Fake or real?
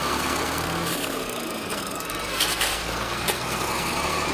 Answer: fake